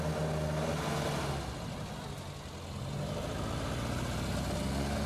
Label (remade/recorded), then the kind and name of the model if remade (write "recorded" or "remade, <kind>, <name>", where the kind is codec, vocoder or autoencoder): recorded